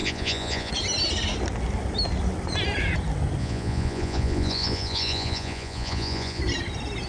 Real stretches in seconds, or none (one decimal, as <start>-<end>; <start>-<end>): 0.7-3.4; 6.4-7.1